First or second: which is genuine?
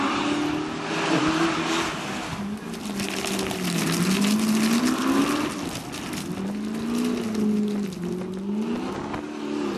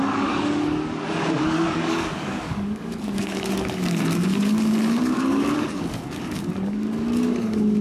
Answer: first